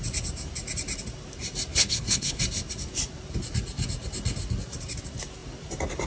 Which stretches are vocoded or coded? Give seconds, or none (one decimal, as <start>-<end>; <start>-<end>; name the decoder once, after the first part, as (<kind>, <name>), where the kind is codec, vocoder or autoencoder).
1.7-2.4 (codec, HILCodec)